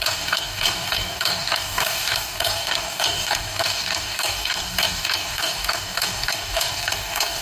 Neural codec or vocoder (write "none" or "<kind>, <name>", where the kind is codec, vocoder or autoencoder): codec, DAC